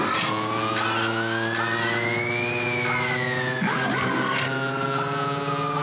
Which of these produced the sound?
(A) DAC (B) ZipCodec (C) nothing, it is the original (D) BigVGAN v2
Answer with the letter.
C